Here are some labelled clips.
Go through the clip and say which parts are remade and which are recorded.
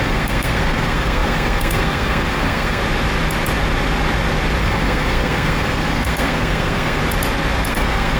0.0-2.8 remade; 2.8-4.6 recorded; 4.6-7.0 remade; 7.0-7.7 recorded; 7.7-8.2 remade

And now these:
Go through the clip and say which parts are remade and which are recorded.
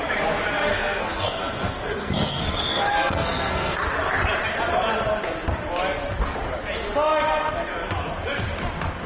0.0-0.7 recorded; 0.7-3.8 remade; 3.8-9.1 recorded